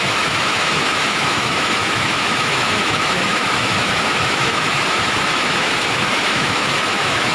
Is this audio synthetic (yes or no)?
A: yes